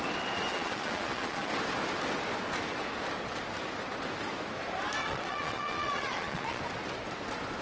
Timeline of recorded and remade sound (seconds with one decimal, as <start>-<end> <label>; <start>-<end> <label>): 0.0-0.5 recorded; 0.5-1.5 remade; 1.5-5.0 recorded; 5.0-6.6 remade; 6.6-7.6 recorded